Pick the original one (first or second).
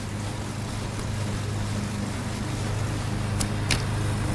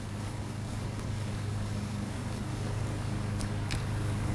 first